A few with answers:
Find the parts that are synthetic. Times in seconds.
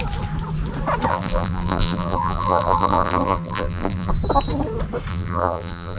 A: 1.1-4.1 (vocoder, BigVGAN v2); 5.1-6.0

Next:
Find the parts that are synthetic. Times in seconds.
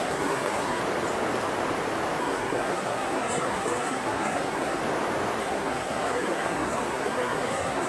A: 0.0-0.8 (codec, SNAC); 2.2-4.8; 5.4-7.9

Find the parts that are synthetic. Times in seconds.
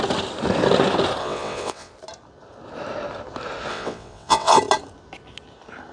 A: 1.2-1.9 (vocoder, WaveNeXt); 3.7-4.6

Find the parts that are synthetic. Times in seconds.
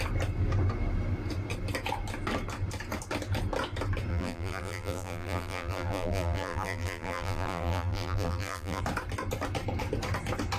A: 4.1-8.8 (vocoder, BigVGAN v2)